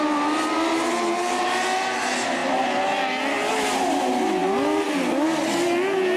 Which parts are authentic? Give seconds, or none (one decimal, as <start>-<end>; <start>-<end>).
0.0-6.2